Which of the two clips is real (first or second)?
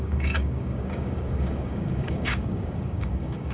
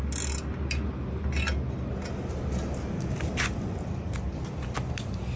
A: second